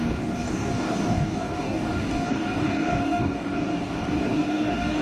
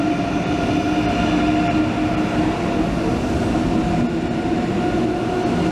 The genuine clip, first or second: second